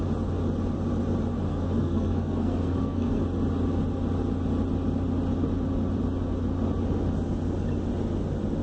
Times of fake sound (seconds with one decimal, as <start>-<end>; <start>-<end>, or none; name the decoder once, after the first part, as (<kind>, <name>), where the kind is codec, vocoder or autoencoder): 1.5-3.2 (codec, SNAC)